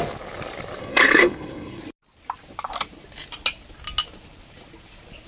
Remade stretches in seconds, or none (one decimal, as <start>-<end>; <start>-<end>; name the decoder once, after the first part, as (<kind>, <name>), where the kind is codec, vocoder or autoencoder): 0.8-1.8 (codec, SNAC)